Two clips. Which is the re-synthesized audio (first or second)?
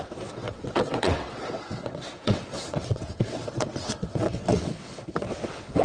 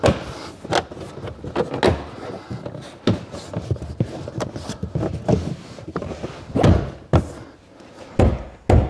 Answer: first